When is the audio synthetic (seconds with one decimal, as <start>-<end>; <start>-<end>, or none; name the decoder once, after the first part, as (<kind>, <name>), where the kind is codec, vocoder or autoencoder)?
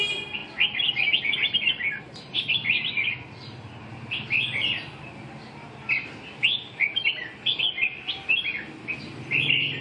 none